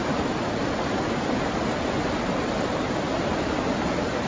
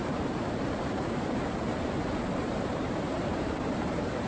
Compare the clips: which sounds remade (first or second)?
second